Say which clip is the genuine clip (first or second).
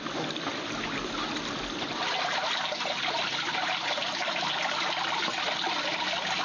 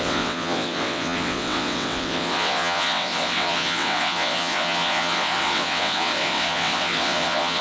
first